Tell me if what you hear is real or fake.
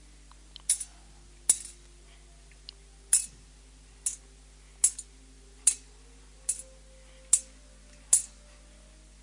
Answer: real